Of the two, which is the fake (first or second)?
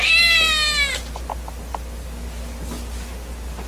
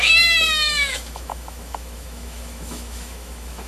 second